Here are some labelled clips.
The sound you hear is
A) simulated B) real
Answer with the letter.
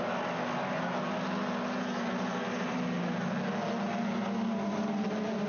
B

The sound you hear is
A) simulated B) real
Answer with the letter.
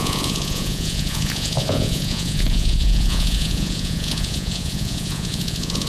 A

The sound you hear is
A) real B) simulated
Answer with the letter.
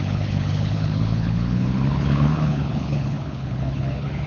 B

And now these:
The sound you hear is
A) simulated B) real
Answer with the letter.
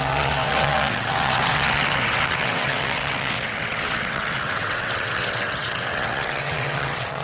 A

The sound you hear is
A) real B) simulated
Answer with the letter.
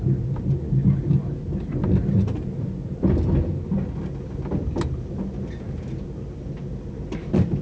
A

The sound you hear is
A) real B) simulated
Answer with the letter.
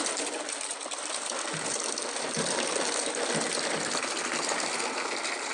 A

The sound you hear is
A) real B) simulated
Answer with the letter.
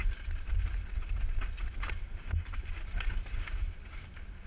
A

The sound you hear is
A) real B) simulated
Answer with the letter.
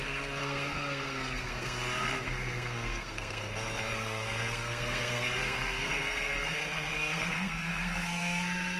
B